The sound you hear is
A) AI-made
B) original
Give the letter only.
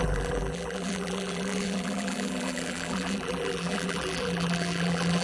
A